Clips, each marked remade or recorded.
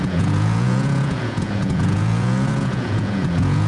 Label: remade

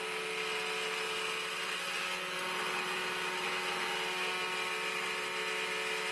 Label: recorded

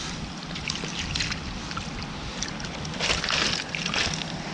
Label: recorded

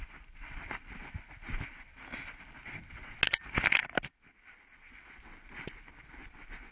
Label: recorded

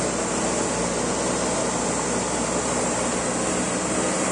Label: recorded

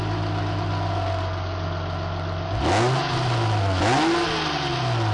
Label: recorded